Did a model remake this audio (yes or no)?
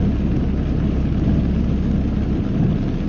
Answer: no